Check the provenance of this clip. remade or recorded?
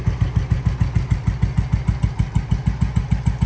recorded